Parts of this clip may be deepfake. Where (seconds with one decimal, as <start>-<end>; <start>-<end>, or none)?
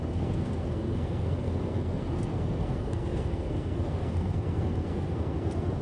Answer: 0.0-5.8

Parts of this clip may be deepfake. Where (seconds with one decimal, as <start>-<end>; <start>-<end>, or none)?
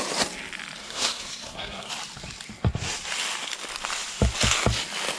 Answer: 0.8-1.9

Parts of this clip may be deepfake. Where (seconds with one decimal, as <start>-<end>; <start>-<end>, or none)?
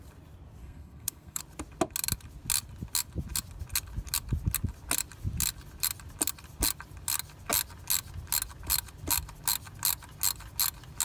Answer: 0.6-1.4